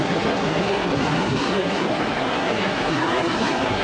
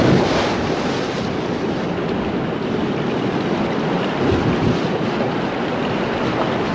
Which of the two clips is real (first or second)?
second